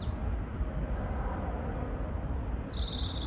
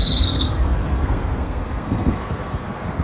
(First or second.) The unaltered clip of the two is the first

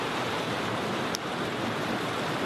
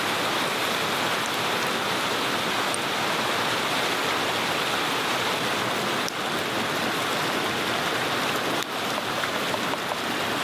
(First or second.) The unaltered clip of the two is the second